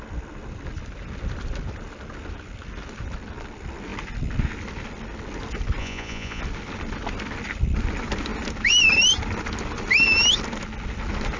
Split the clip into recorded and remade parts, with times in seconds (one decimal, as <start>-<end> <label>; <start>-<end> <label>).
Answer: 0.0-5.8 recorded; 5.8-6.4 remade; 6.4-11.4 recorded